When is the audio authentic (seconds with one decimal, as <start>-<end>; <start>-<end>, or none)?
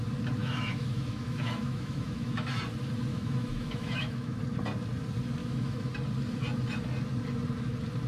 0.0-0.4; 2.6-3.1; 4.4-5.4; 5.9-8.1